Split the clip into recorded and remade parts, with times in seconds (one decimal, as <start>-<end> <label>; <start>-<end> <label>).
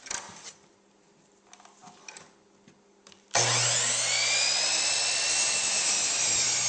0.0-6.7 recorded